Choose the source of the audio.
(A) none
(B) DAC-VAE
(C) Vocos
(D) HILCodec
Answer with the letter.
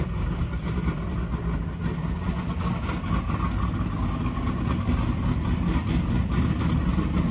A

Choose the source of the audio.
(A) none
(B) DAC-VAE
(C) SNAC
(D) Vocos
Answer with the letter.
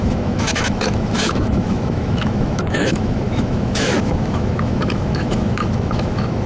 B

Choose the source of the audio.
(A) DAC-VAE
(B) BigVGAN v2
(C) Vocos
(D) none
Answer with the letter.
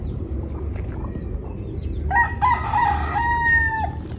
D